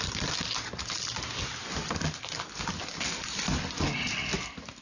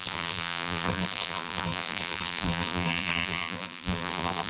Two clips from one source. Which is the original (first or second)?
first